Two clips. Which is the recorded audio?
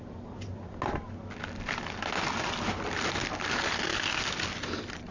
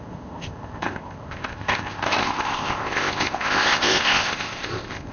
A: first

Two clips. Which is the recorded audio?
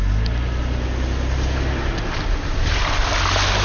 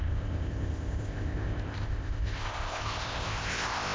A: first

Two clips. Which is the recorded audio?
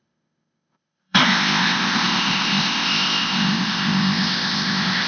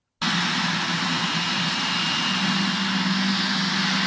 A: second